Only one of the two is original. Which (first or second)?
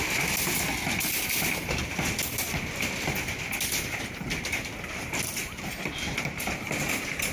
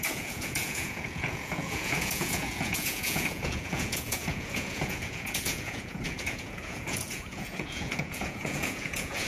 first